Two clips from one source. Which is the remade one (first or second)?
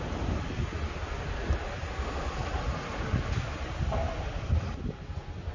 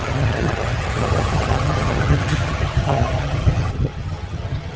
second